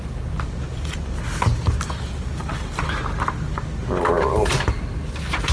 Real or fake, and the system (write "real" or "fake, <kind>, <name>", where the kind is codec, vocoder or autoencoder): real